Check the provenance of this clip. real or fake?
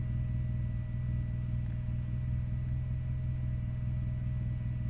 real